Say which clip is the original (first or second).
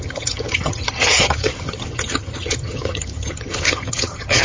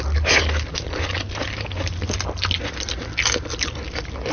second